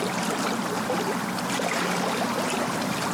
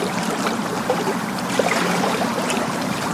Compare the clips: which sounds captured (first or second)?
first